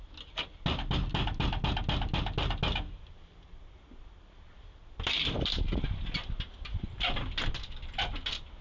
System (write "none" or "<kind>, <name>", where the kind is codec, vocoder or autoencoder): none